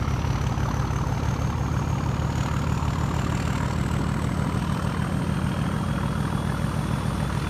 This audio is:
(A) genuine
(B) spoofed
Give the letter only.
A